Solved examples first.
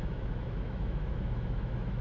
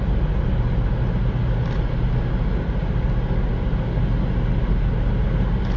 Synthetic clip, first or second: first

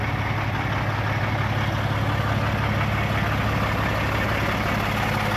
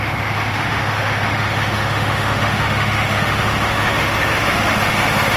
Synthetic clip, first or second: second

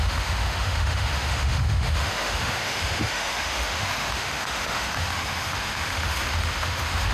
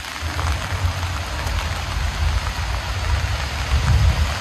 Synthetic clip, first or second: first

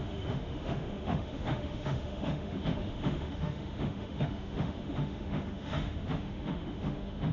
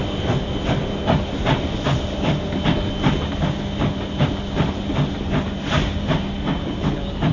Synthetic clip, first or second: first